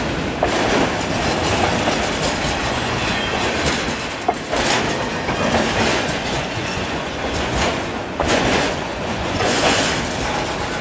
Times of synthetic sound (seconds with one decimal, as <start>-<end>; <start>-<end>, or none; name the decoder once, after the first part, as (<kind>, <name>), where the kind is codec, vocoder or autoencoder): 2.6-3.5 (vocoder, Vocos); 5.9-9.9